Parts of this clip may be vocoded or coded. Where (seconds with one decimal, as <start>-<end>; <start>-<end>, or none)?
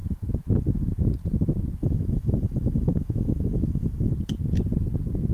1.8-4.1